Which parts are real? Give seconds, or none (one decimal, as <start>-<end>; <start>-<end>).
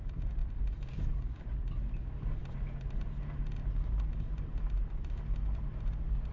0.0-0.4; 1.7-2.4